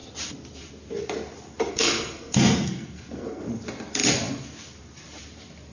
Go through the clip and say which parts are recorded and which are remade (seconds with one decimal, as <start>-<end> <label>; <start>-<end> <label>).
0.0-1.7 recorded; 1.7-3.4 remade; 3.4-5.7 recorded